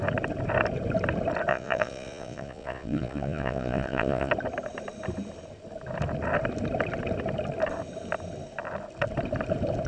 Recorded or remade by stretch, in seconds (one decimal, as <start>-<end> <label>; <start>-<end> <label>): 0.0-1.5 recorded; 1.5-4.3 remade; 4.3-9.9 recorded

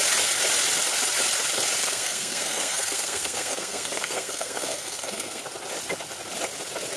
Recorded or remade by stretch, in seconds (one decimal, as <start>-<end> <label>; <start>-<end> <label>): 0.0-1.8 recorded; 1.8-5.4 remade; 5.4-7.0 recorded